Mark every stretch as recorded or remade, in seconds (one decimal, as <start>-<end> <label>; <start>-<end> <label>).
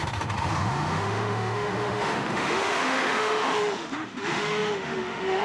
0.0-5.4 remade